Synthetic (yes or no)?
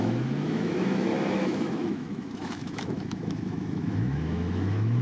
yes